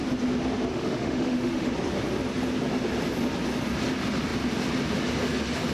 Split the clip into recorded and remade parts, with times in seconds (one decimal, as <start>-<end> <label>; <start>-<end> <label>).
0.0-0.7 recorded; 0.7-1.7 remade; 1.7-5.7 recorded